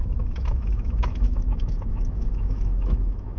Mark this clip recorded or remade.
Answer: remade